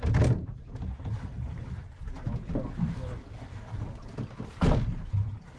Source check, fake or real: real